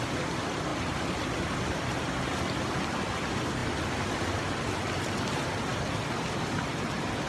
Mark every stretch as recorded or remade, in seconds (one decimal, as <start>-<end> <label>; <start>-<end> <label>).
0.0-7.3 recorded